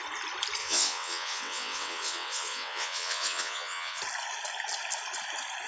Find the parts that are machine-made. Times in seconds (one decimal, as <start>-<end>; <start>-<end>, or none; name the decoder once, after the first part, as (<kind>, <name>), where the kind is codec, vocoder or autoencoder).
0.6-4.0 (vocoder, WaveNeXt)